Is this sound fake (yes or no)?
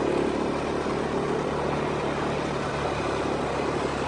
no